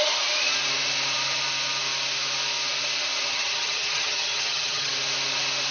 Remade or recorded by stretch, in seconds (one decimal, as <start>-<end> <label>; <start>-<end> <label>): 0.0-3.3 recorded; 3.3-4.9 remade; 4.9-5.7 recorded